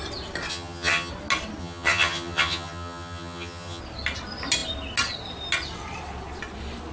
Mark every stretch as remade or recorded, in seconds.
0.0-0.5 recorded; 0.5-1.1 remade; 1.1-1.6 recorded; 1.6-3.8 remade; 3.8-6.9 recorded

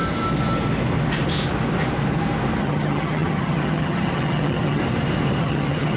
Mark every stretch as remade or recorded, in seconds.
0.0-2.6 recorded; 2.6-4.8 remade; 4.8-5.4 recorded; 5.4-6.0 remade

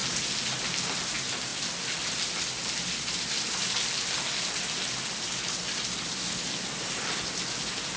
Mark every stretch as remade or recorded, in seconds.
0.0-8.0 recorded